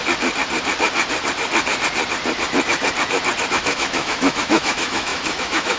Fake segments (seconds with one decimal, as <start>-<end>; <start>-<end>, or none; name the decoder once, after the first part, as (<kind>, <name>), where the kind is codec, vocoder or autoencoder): 3.5-5.8 (autoencoder, DAC-VAE)